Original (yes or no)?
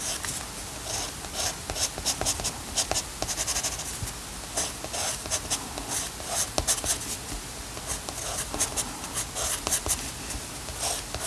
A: yes